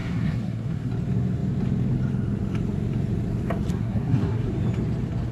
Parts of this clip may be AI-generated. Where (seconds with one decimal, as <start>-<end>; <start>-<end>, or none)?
0.0-0.9; 3.7-4.5